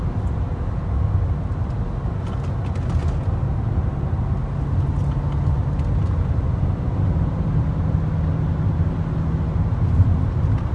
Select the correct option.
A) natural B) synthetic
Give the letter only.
A